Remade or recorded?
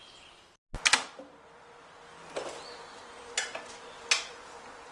recorded